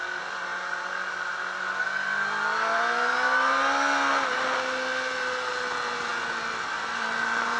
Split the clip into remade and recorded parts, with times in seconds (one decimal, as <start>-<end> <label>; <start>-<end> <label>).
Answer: 0.0-7.6 recorded